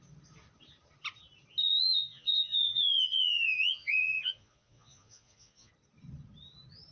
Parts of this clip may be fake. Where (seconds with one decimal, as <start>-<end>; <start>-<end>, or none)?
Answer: 1.6-5.7